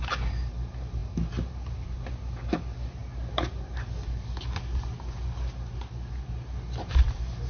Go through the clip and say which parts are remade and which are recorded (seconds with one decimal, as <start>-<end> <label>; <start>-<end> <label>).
0.0-7.5 recorded